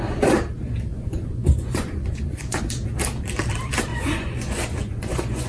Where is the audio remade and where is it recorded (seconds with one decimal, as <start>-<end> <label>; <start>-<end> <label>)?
0.0-0.9 recorded; 0.9-2.6 remade; 2.6-3.9 recorded; 3.9-5.5 remade